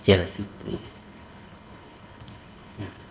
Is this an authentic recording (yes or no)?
no